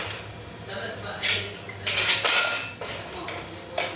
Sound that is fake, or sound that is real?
real